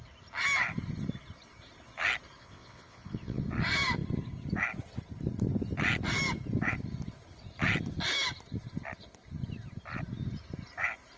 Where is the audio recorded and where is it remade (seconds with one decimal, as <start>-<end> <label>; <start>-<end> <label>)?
0.0-2.4 recorded; 2.4-3.4 remade; 3.4-11.2 recorded